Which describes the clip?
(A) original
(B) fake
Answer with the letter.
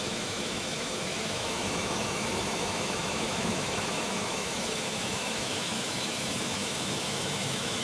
B